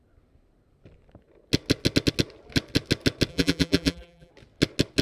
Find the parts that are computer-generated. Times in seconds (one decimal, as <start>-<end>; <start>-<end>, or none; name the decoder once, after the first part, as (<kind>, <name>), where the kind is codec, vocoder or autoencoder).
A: 3.3-4.3 (vocoder, BigVGAN v2)